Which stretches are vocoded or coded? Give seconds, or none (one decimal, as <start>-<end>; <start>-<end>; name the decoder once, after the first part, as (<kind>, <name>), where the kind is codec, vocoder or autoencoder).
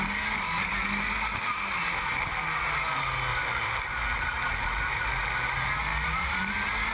3.3-5.1 (vocoder, BigVGAN v2); 5.9-6.5